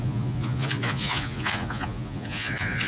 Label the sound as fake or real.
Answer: fake